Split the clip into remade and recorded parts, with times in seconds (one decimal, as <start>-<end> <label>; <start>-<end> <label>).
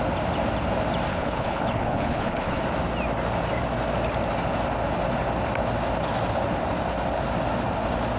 0.0-1.1 recorded; 1.1-2.6 remade; 2.6-8.2 recorded